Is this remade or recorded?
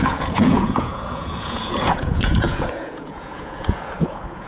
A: remade